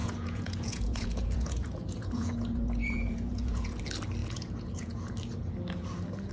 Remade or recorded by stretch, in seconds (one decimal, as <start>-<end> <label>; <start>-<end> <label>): 0.0-3.8 remade; 3.8-4.2 recorded; 4.2-5.1 remade; 5.1-6.3 recorded